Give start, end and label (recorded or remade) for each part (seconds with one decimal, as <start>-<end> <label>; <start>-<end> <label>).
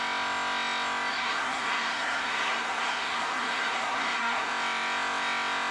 0.0-1.1 recorded; 1.1-4.5 remade; 4.5-5.7 recorded